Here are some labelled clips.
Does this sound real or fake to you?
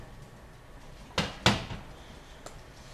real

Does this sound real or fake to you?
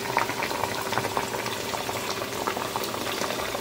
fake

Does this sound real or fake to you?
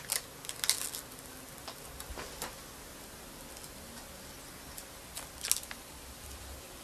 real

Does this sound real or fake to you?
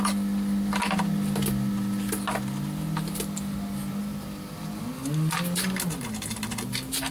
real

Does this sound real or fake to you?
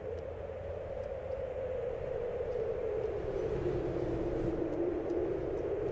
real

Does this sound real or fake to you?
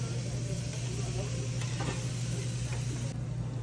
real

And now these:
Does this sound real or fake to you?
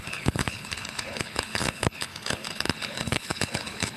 fake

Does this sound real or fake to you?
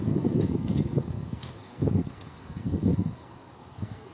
fake